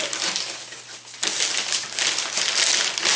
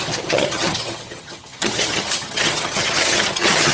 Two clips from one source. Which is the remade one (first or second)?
second